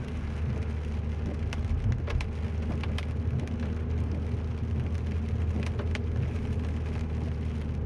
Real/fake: real